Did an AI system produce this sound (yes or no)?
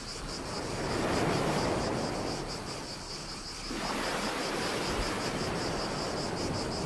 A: no